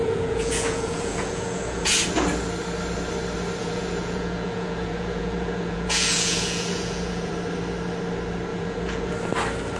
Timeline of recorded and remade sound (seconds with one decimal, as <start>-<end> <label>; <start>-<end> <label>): 0.0-1.9 remade; 1.9-3.6 recorded; 3.6-7.3 remade; 7.3-8.5 recorded; 8.5-9.1 remade; 9.1-9.8 recorded